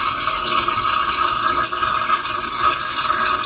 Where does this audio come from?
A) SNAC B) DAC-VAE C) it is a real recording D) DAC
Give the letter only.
C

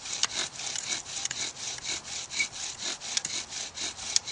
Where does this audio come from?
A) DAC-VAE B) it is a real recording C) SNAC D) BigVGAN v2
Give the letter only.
B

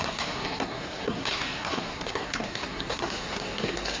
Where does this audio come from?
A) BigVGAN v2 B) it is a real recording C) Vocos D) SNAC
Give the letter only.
D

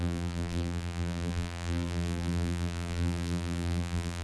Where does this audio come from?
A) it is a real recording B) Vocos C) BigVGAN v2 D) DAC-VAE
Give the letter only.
C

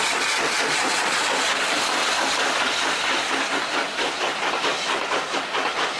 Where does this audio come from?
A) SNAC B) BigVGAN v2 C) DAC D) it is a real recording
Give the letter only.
D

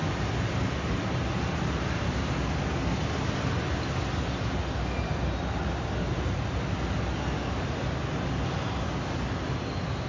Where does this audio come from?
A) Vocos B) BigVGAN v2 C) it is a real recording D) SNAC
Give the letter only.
C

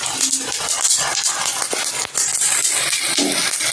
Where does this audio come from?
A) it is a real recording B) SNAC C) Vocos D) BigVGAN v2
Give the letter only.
A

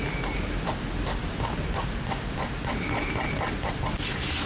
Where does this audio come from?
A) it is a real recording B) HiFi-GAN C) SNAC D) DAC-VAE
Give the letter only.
A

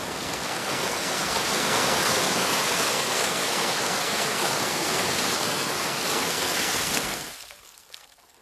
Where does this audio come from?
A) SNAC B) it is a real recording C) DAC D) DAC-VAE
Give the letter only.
A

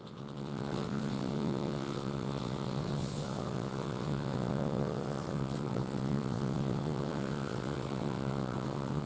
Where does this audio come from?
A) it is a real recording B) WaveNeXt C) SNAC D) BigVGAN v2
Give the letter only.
B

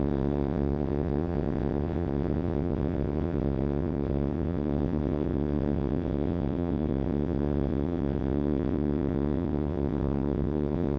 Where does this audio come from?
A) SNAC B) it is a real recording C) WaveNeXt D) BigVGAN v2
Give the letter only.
C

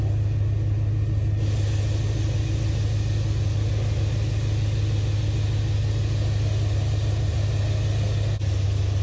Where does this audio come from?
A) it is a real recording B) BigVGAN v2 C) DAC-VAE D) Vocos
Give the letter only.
A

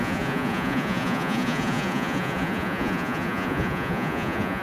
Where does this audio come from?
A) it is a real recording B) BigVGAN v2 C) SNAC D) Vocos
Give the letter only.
D